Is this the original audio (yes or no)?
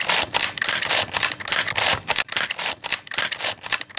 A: yes